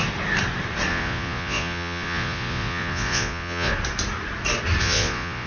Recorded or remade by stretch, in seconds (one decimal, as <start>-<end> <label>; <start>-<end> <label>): 0.0-0.9 recorded; 0.9-3.7 remade; 3.7-4.8 recorded; 4.8-5.5 remade